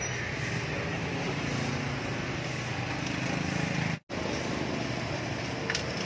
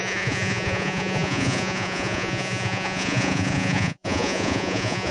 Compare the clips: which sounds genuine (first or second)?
first